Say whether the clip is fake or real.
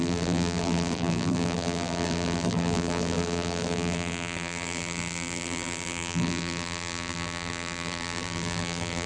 fake